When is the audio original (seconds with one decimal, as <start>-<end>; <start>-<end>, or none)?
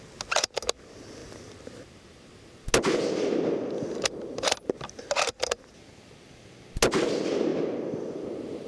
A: 0.0-8.7